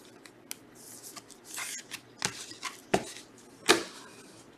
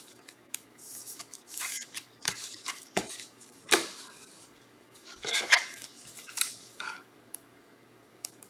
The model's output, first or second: second